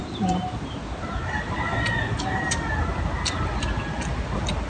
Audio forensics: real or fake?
real